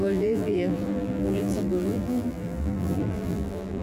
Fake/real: fake